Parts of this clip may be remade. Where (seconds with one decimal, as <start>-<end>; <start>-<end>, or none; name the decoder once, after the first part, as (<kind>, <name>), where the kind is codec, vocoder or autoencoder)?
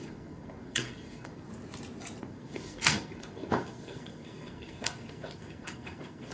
0.0-1.5 (codec, SNAC); 2.2-6.3